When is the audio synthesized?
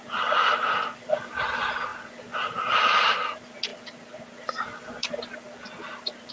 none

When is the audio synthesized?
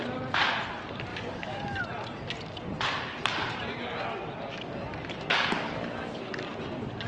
1.1-1.8; 5.3-6.3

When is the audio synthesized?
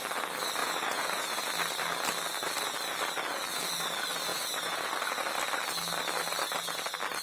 0.6-1.5; 4.3-4.9